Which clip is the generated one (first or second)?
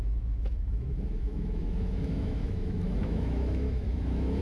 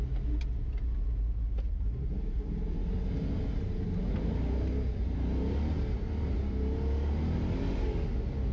first